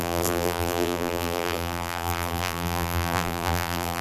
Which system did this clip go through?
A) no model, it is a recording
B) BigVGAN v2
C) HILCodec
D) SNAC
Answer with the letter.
B